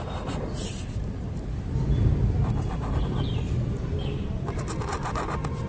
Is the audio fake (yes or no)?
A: yes